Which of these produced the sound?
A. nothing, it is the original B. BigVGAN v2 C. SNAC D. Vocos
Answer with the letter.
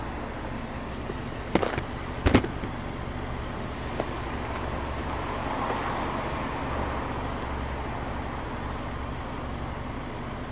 A